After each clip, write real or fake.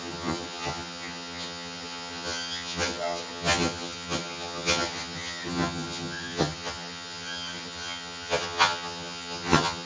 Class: fake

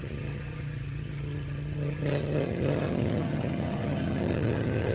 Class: fake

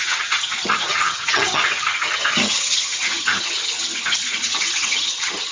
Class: fake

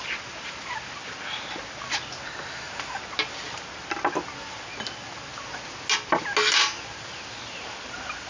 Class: real